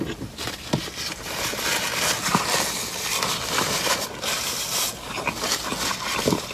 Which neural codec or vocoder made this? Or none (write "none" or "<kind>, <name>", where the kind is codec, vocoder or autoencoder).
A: vocoder, BigVGAN v2